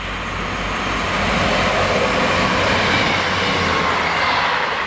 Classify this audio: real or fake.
real